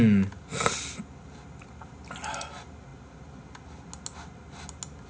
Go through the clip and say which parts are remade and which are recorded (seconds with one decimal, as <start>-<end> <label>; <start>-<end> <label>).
0.0-5.1 recorded